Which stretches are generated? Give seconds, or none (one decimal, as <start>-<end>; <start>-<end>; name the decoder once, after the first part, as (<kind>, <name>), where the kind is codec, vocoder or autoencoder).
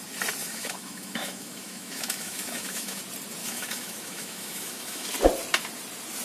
0.4-3.0 (autoencoder, DAC-VAE); 3.4-5.1